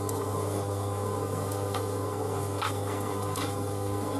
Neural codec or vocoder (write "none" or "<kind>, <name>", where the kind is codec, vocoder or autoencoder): codec, SNAC